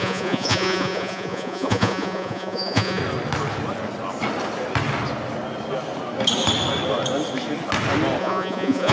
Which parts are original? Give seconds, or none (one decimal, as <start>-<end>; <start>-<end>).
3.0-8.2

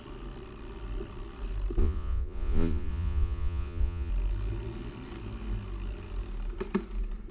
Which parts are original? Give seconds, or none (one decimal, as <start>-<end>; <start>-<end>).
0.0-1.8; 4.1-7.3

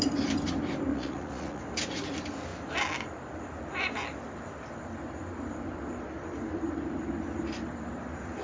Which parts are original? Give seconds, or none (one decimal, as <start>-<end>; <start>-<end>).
0.0-0.9; 1.6-8.4

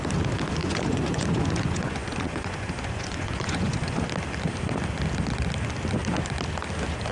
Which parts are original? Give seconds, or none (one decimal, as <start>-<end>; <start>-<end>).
0.0-0.6; 4.0-7.1

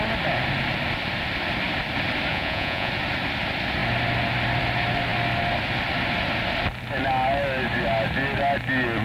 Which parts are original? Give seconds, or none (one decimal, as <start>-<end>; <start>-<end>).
0.0-2.3; 2.9-9.0

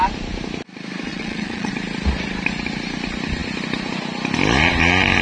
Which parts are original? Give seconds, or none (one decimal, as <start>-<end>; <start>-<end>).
0.0-1.1; 1.7-5.2

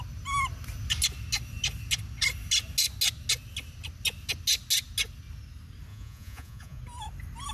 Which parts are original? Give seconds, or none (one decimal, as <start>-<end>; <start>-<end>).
0.0-5.9; 6.8-7.5